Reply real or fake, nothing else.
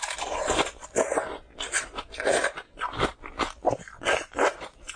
fake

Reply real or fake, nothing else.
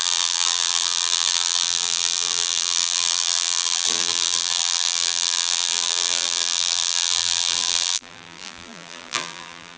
fake